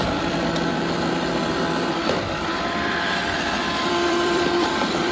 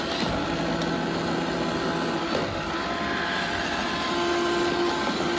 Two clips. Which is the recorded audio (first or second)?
second